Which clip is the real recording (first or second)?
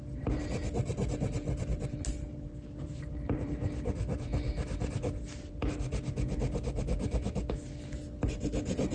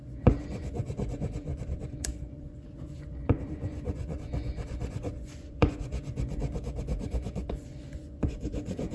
first